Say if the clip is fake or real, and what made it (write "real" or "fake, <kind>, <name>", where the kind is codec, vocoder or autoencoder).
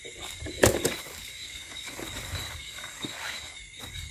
fake, codec, DAC